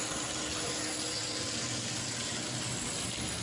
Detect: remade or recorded recorded